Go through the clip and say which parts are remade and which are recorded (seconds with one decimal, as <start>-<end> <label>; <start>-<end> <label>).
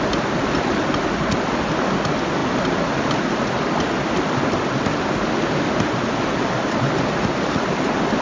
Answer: 0.0-8.2 recorded